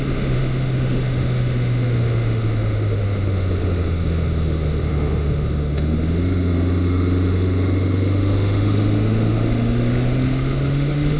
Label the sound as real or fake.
fake